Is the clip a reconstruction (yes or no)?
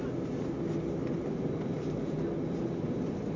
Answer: no